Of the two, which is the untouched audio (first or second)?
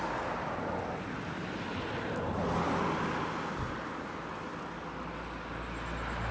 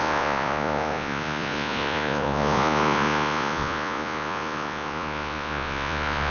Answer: first